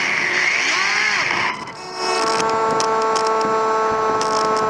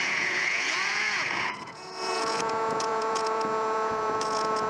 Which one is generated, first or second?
second